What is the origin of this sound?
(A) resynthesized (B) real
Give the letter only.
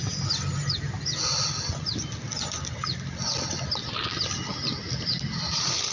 B